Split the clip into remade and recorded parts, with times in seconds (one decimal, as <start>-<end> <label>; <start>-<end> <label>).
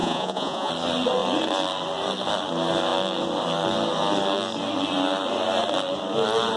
0.0-0.7 remade; 0.7-6.6 recorded